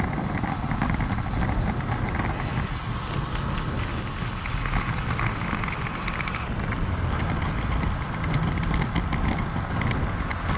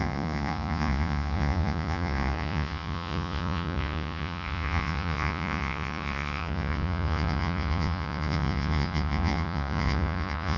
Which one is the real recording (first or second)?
first